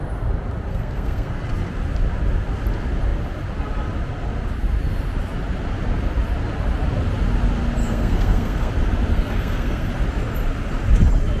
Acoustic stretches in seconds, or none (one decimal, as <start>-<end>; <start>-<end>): 0.0-0.7; 1.3-7.8; 8.7-9.1; 9.9-11.4